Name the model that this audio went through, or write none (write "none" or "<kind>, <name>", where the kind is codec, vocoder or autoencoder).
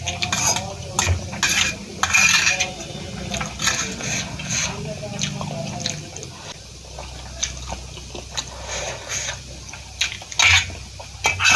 none